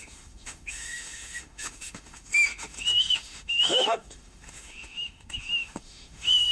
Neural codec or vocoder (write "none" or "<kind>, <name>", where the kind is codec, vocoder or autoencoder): autoencoder, DAC-VAE